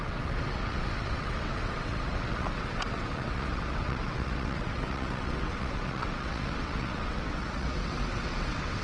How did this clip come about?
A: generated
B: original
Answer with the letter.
A